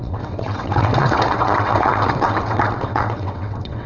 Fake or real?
fake